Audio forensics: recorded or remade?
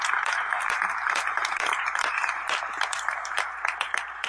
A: remade